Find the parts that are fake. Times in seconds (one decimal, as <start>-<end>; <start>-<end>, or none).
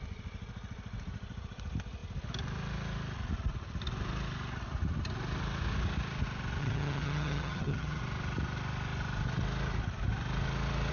6.6-8.0